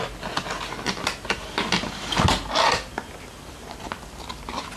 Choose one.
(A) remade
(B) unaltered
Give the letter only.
B